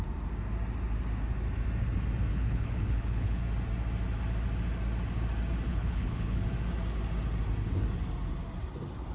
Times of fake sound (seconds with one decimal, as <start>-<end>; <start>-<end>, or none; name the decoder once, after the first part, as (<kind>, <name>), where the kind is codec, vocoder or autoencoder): 2.3-3.4 (codec, HILCodec); 5.7-6.4